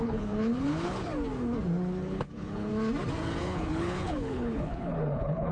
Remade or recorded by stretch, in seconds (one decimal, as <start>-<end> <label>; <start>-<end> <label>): 0.0-1.1 remade; 1.1-1.8 recorded; 1.8-2.7 remade; 2.7-3.4 recorded; 3.4-5.5 remade